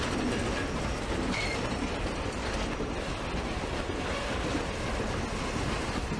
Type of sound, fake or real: real